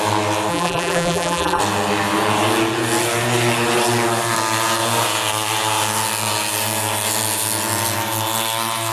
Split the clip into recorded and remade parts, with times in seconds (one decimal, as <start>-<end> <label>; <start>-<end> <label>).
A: 0.0-0.5 recorded; 0.5-1.6 remade; 1.6-8.9 recorded